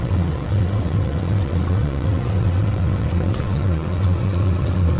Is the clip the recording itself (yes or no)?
no